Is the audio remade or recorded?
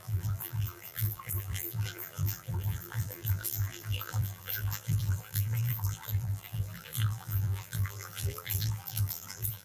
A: remade